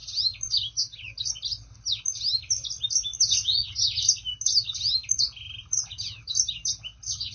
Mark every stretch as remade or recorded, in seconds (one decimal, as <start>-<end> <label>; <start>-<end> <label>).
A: 0.0-7.3 recorded